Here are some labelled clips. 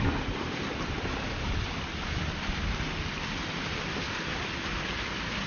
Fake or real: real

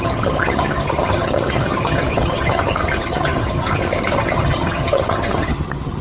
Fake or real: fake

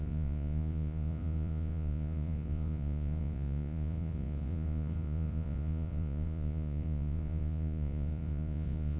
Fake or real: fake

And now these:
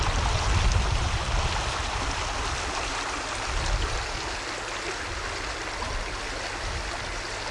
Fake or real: real